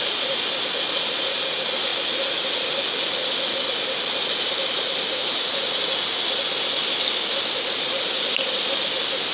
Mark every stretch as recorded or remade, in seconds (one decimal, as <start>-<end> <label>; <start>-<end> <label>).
0.0-9.3 recorded